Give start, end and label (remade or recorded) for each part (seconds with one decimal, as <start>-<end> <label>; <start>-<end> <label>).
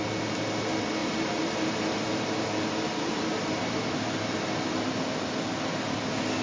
0.0-1.0 recorded; 1.0-4.8 remade; 4.8-6.4 recorded